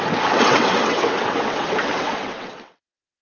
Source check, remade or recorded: remade